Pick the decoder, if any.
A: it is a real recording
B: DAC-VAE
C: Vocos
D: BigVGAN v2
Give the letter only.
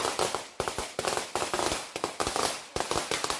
D